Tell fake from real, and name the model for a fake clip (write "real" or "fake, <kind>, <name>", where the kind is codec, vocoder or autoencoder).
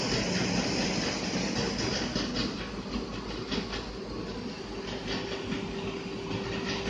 real